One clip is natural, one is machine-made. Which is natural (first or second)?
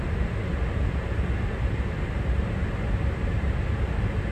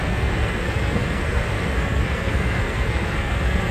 first